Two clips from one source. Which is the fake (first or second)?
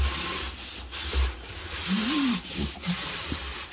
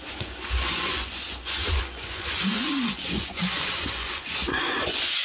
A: second